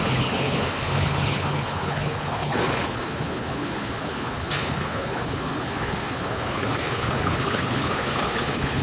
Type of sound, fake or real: fake